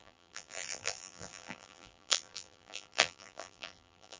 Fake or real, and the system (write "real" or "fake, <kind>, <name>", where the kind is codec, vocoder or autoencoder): fake, vocoder, BigVGAN v2